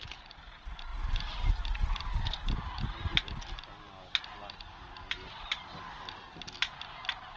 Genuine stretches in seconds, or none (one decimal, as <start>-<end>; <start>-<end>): 0.0-7.4